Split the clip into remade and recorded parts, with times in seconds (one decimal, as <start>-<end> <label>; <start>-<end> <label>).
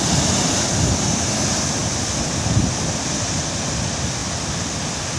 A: 0.0-5.2 recorded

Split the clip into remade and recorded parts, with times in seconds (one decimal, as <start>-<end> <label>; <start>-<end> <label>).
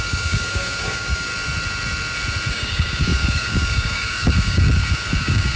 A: 0.0-1.3 remade; 1.3-2.5 recorded; 2.5-5.6 remade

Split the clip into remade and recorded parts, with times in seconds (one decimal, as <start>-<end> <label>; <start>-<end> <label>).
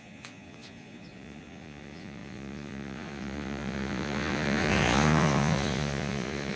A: 0.0-6.6 remade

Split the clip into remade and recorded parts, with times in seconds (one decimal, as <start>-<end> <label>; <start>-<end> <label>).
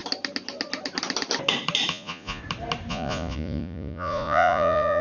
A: 0.0-1.9 recorded; 1.9-2.4 remade; 2.4-2.9 recorded; 2.9-5.0 remade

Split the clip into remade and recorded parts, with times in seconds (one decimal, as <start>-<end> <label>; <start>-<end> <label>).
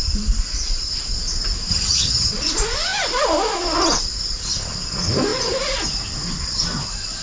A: 0.0-1.7 recorded; 1.7-2.3 remade; 2.3-7.2 recorded